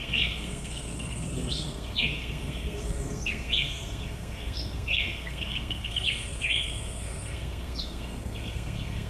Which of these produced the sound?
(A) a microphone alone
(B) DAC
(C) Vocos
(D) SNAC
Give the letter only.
D